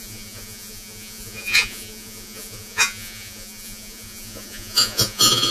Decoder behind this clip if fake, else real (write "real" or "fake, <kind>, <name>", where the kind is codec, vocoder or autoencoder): fake, vocoder, Vocos